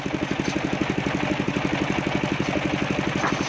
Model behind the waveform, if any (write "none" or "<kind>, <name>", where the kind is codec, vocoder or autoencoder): none